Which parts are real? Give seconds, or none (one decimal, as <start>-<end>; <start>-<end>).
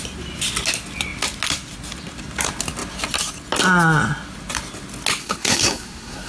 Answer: 0.0-5.2